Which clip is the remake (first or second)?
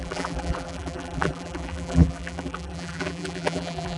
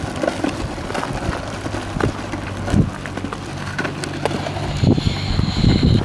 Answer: first